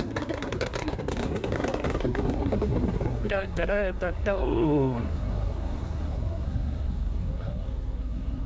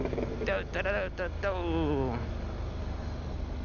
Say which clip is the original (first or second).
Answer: second